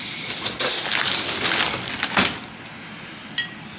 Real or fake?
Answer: real